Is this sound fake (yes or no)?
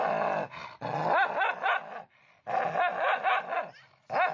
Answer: no